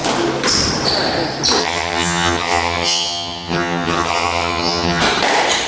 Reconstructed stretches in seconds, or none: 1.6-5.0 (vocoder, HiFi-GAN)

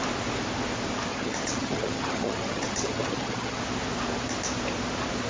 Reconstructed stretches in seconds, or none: 1.1-3.6 (vocoder, HiFi-GAN)

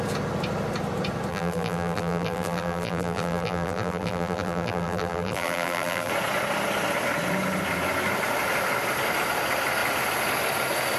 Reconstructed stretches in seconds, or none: 1.3-6.1 (vocoder, BigVGAN v2)

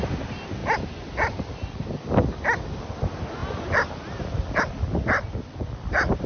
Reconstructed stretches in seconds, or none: none

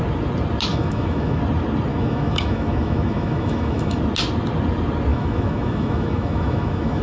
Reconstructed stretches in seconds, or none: 0.7-1.4 (autoencoder, DAC-VAE); 1.9-4.0; 5.1-7.0